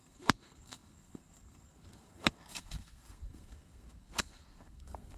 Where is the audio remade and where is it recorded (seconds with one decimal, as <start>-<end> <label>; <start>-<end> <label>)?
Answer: 0.0-5.2 remade